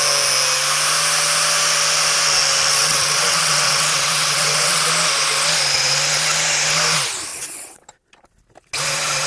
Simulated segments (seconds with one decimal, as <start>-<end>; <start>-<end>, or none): 2.7-4.9; 7.3-7.9